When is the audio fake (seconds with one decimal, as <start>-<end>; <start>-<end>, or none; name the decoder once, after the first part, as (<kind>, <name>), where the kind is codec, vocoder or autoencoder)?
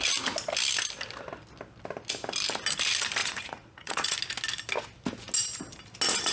3.2-4.2 (vocoder, Vocos)